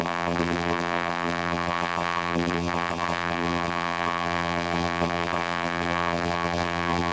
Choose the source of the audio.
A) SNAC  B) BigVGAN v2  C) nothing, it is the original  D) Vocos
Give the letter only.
B